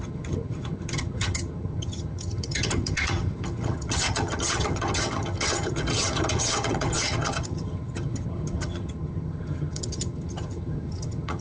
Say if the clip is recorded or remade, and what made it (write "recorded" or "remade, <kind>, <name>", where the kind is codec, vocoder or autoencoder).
remade, vocoder, HiFi-GAN